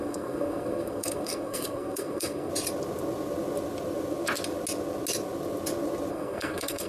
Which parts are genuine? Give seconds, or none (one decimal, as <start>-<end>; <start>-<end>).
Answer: 2.5-6.1